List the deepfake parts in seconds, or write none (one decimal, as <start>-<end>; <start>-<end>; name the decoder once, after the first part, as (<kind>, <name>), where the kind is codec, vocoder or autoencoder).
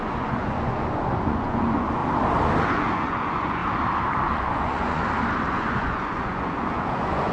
0.0-2.0 (vocoder, Vocos); 2.6-3.6; 4.3-5.0; 5.5-7.3